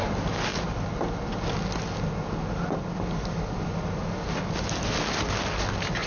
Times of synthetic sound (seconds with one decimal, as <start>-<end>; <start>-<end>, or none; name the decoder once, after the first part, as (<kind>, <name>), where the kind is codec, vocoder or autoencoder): none